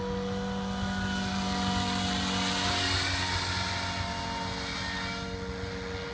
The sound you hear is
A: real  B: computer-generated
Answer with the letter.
A